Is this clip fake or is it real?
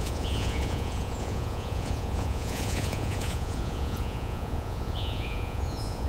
fake